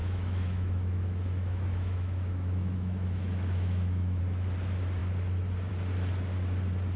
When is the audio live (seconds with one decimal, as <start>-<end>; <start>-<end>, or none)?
4.2-7.0